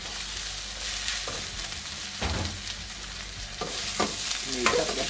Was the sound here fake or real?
real